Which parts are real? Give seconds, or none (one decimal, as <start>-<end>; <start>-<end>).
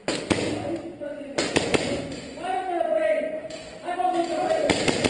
0.0-0.9; 3.7-5.1